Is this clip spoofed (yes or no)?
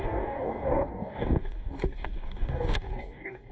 yes